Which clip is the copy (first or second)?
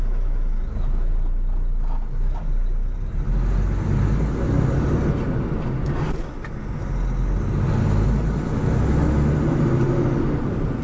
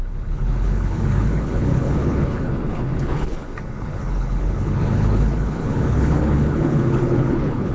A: second